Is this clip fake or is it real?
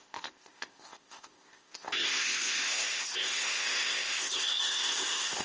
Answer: fake